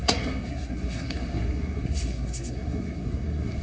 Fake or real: fake